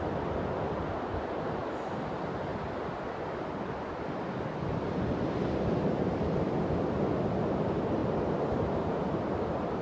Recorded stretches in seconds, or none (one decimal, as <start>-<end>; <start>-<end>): 0.0-2.5; 7.2-9.8